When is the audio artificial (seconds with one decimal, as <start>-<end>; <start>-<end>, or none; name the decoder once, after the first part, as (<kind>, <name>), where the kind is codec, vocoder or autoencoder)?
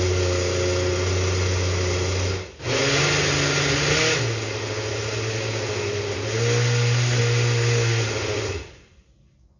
none